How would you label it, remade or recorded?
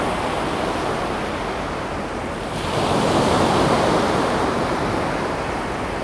remade